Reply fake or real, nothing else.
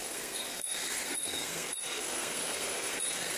fake